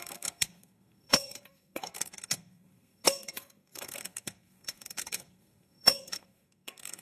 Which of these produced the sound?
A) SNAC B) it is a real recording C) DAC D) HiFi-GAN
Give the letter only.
A